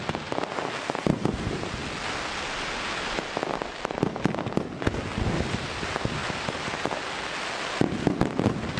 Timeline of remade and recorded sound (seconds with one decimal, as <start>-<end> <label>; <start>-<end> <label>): 0.0-8.8 recorded

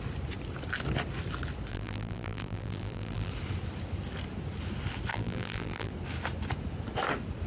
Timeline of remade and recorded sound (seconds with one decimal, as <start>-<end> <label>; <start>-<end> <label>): 0.0-1.7 recorded; 1.7-3.3 remade; 3.3-5.1 recorded; 5.1-5.9 remade; 5.9-7.5 recorded